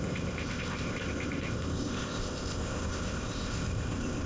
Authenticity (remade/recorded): remade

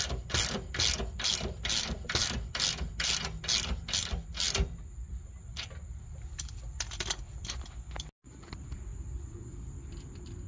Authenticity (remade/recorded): recorded